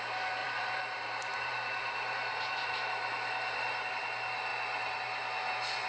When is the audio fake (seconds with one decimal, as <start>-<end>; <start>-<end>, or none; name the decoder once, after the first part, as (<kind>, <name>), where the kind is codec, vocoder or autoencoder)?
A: 0.4-3.9 (vocoder, BigVGAN v2)